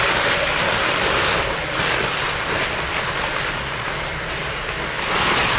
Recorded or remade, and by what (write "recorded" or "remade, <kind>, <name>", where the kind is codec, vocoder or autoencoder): remade, vocoder, BigVGAN v2